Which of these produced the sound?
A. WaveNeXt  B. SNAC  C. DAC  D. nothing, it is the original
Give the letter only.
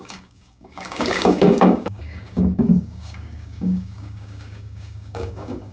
C